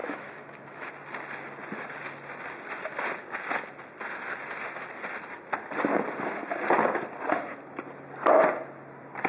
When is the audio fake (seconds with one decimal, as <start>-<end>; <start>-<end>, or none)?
0.0-0.9